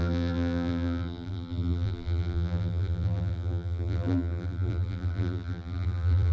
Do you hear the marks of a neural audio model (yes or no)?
yes